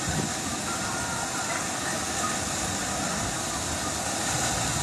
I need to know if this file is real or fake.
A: real